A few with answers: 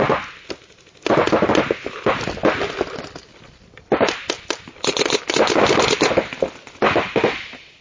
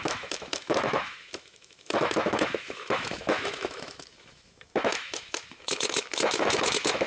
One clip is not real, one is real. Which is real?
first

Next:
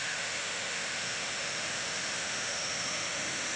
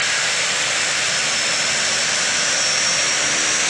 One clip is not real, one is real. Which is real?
second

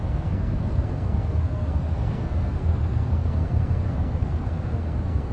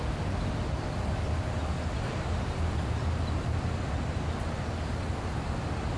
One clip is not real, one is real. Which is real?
second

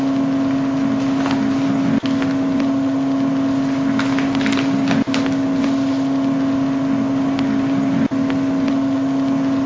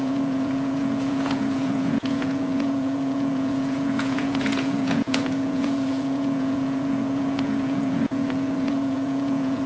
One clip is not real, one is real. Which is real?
first